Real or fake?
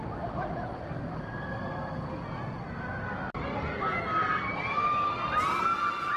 real